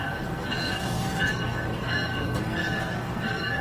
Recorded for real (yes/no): no